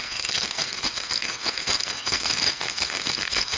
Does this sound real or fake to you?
fake